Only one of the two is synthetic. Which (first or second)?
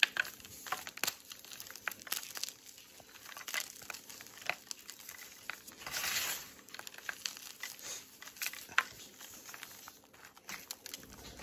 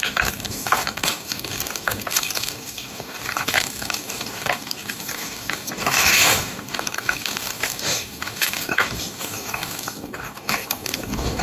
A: second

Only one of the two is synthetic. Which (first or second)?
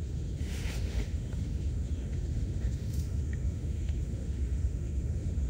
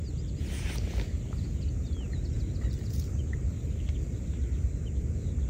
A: first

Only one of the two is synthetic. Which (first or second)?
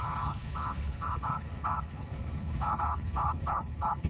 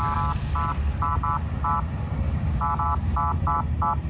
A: first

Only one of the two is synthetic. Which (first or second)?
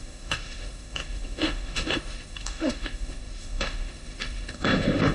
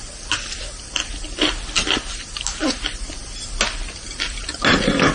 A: first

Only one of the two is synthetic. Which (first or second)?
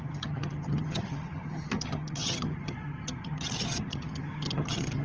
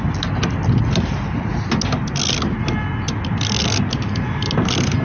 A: first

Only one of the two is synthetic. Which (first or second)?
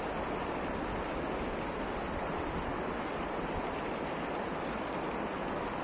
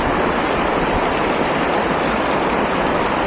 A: second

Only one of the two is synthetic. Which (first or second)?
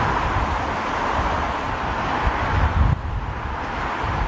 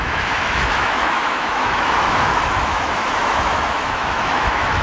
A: second